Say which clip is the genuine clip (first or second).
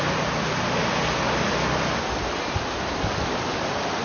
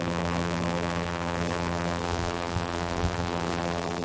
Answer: first